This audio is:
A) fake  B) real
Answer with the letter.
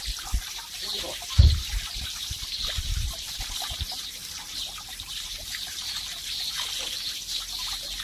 A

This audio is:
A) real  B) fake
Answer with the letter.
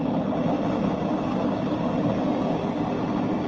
A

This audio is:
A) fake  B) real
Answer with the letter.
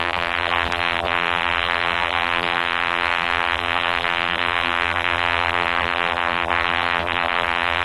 A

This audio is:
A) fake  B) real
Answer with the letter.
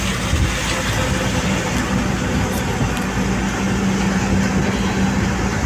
B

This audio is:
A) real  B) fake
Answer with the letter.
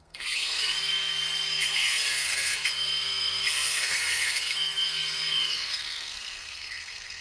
B